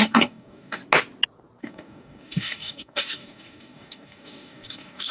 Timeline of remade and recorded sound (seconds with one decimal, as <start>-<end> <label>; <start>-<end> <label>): 0.0-0.8 remade; 0.8-1.6 recorded; 1.6-5.1 remade